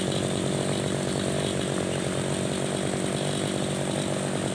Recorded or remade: recorded